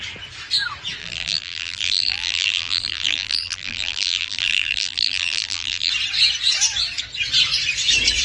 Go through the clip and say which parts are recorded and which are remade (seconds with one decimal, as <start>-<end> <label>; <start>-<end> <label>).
0.0-1.0 recorded; 1.0-5.9 remade; 5.9-8.2 recorded